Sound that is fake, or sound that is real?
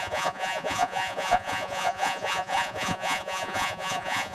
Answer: fake